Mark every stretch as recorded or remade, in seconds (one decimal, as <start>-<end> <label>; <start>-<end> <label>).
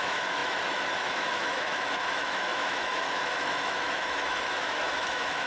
0.0-5.5 remade